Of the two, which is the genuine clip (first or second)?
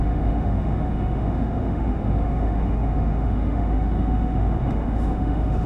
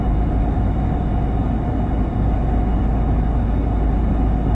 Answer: second